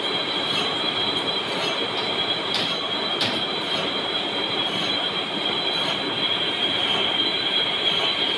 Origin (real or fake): fake